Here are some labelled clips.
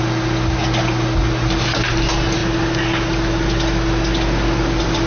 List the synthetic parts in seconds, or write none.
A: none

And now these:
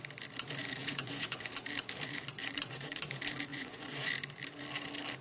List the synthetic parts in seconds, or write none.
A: 0.8-1.5 (vocoder, Vocos); 2.4-3.0; 3.5-4.1

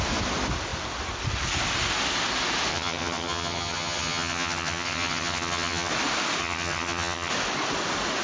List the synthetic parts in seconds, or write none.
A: 2.7-5.9 (vocoder, HiFi-GAN); 6.4-7.3

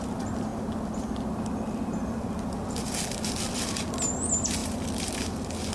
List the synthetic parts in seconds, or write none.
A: none

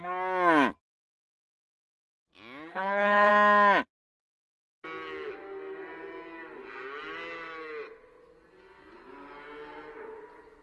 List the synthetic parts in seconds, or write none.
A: 2.7-3.3 (codec, HILCodec)

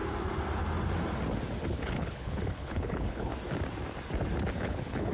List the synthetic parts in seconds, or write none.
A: 1.7-3.3 (codec, HILCodec); 4.5-5.1